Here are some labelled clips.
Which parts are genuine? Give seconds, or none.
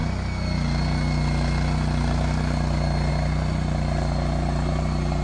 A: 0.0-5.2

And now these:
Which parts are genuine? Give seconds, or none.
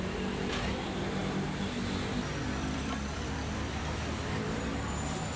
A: 0.0-2.4; 4.6-5.4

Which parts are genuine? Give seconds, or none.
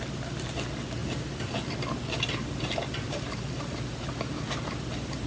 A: 0.0-5.3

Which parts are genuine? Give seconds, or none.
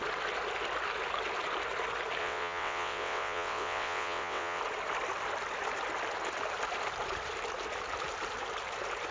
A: 0.0-2.2; 4.6-9.1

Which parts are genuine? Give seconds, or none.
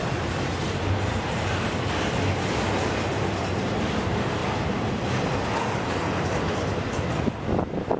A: 0.0-8.0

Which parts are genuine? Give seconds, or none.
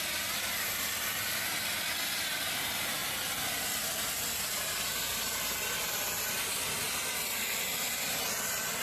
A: 0.0-8.8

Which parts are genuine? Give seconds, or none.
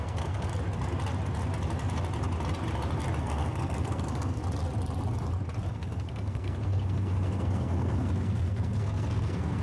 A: 0.5-3.2; 4.4-5.7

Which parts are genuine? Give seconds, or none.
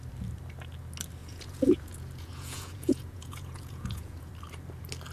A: 0.0-1.2; 4.3-5.1